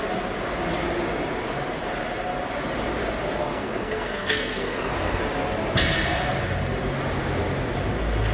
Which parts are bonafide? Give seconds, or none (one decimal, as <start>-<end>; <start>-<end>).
0.0-3.4; 5.2-8.3